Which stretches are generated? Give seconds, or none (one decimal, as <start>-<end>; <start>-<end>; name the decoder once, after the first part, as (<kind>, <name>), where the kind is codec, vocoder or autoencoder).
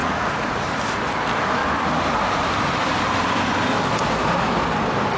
0.0-0.6 (vocoder, Vocos)